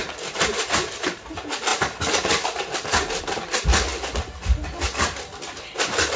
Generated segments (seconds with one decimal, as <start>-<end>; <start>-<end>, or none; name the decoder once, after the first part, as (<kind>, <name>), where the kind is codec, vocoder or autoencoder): none